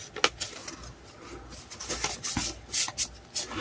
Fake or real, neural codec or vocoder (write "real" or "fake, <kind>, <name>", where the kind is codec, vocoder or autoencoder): real